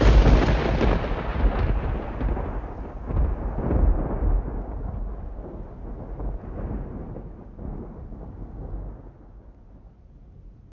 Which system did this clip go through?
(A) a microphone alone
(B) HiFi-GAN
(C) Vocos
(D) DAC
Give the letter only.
A